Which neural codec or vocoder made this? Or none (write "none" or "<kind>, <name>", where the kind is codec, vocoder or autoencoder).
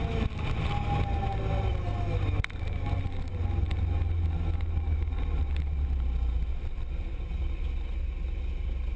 none